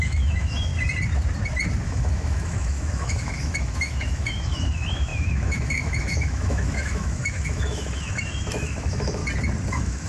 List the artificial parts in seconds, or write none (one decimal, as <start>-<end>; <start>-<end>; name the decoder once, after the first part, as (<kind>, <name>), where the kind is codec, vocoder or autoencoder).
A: 0.0-0.7 (autoencoder, DAC-VAE); 1.8-9.2; 9.7-10.1